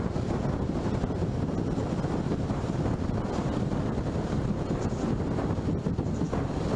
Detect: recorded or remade recorded